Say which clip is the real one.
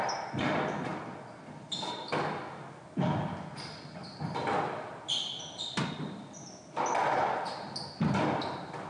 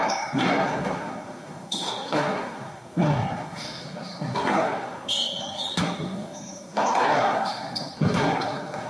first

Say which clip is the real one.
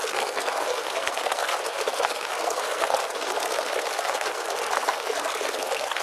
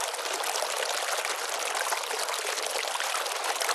second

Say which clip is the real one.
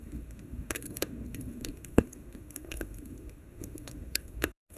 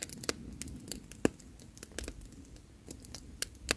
second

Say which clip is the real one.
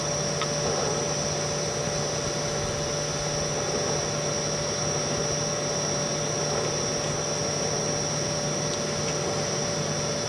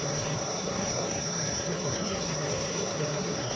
first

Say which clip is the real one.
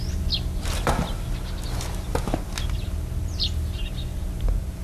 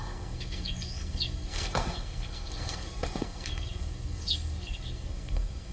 first